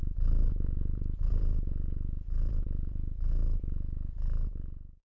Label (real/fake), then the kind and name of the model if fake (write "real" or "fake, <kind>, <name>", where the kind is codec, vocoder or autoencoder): fake, vocoder, BigVGAN v2